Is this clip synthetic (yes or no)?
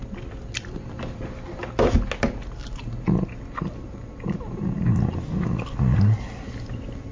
no